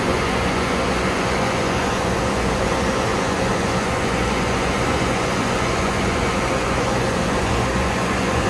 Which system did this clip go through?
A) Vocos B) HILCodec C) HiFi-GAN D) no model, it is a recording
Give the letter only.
A